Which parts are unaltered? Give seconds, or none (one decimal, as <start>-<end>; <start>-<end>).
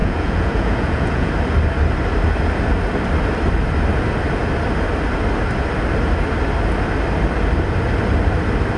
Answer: 1.3-8.8